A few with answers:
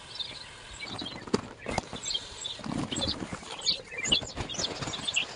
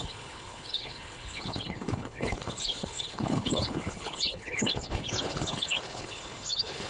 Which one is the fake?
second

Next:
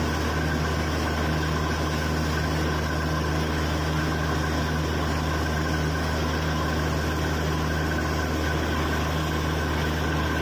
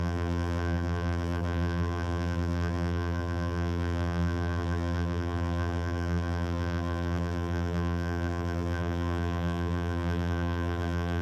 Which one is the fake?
second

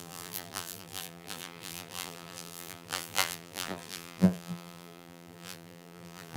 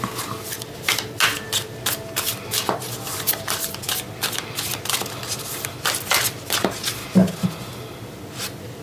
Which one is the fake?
first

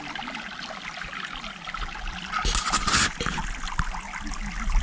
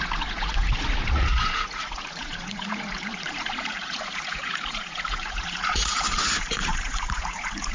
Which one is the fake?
second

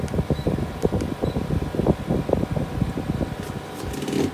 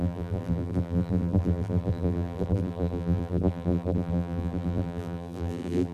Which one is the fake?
second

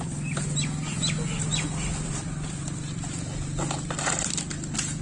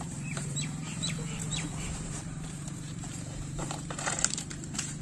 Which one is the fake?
second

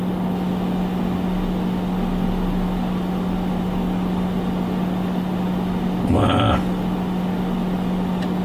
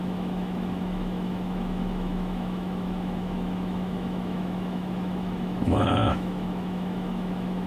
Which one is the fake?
second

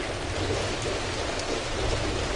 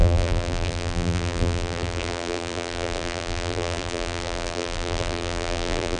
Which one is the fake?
second